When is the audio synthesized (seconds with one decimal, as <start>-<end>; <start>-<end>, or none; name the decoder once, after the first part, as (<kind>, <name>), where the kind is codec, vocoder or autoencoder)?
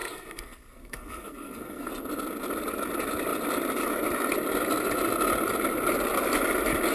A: 0.0-1.9 (codec, SNAC)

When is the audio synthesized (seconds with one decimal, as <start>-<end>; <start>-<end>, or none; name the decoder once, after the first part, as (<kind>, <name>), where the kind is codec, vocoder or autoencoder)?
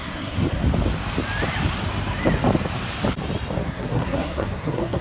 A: 0.0-0.6 (codec, SNAC); 3.6-5.0